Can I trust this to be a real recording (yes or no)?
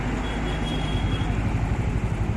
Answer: yes